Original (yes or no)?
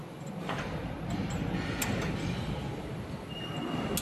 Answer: yes